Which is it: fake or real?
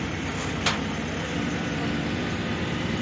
real